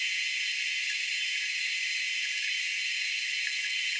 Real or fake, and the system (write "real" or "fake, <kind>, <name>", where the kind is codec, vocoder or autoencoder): real